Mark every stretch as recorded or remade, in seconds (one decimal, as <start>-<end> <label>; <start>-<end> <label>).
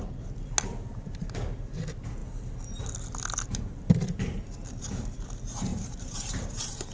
0.0-5.7 recorded; 5.7-6.9 remade